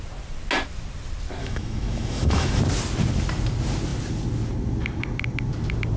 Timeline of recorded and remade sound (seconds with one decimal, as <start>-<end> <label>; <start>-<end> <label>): 0.0-1.4 recorded; 1.4-2.6 remade; 2.6-6.0 recorded